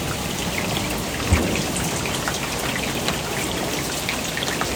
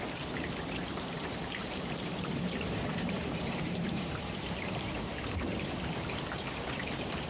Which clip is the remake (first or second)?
second